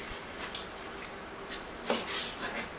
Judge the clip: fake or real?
real